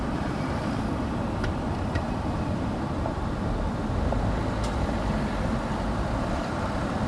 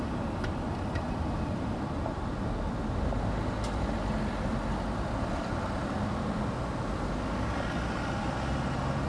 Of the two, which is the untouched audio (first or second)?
second